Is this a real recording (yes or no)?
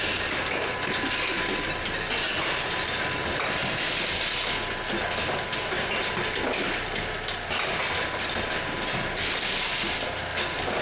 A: yes